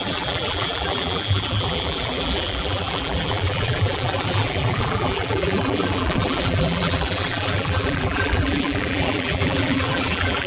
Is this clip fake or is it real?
fake